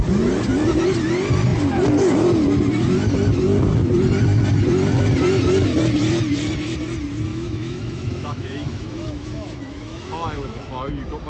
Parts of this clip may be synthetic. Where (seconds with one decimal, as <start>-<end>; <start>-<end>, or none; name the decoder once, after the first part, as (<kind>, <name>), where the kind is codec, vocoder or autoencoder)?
7.3-10.9 (autoencoder, DAC-VAE)